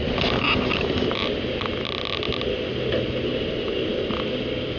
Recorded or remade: recorded